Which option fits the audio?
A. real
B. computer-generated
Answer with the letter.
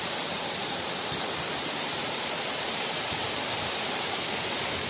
B